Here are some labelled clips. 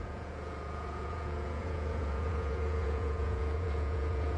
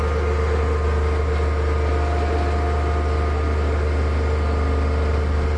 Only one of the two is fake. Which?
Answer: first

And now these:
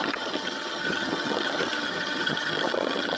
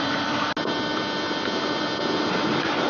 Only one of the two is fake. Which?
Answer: first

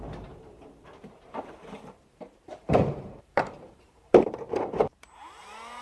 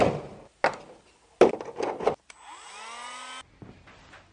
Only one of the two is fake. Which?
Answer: first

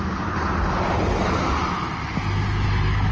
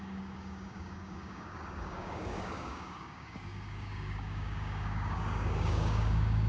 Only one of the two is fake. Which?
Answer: second